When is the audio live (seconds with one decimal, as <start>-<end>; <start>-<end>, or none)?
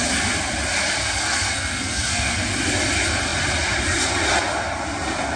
0.0-1.0; 2.4-5.4